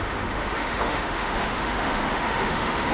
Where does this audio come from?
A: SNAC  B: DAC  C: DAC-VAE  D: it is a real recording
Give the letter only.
C